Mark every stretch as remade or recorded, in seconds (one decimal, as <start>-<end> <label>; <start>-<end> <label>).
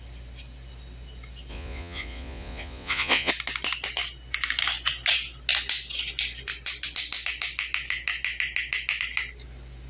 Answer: 0.0-1.5 recorded; 1.5-3.3 remade; 3.3-9.9 recorded